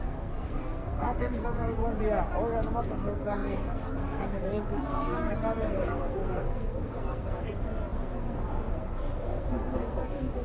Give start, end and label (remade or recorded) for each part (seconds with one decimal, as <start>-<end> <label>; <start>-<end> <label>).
0.0-1.8 remade; 1.8-2.8 recorded; 2.8-10.4 remade